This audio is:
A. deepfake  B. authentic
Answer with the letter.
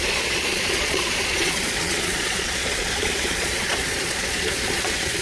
A